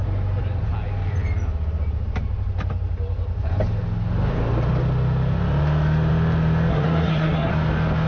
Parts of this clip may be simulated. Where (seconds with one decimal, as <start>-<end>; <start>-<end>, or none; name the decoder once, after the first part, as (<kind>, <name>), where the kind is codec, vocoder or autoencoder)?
6.7-7.5 (codec, SNAC)